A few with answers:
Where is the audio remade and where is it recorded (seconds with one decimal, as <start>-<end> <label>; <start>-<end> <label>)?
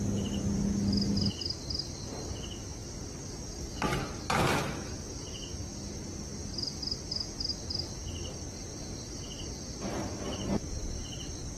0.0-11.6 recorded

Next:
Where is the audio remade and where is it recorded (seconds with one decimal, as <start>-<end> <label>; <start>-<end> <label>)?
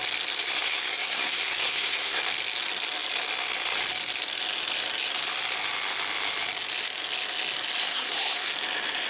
0.0-0.4 recorded; 0.4-2.2 remade; 2.2-7.8 recorded; 7.8-8.5 remade; 8.5-9.1 recorded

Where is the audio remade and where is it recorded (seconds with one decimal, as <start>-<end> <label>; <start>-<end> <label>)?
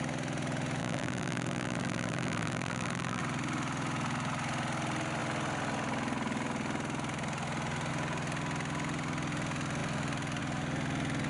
0.0-0.8 recorded; 0.8-3.2 remade; 3.2-11.3 recorded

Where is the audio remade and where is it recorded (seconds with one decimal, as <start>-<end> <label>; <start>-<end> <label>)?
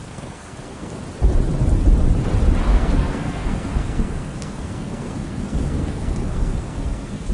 0.0-1.0 remade; 1.0-2.7 recorded; 2.7-7.3 remade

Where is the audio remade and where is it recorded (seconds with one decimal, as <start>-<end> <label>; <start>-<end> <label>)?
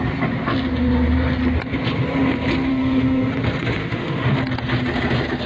0.0-2.7 recorded; 2.7-3.3 remade; 3.3-3.8 recorded; 3.8-4.4 remade; 4.4-5.5 recorded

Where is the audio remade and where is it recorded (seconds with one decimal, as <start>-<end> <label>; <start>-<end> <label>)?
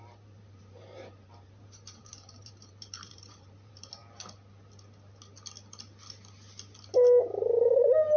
0.0-4.0 remade; 4.0-7.3 recorded; 7.3-8.2 remade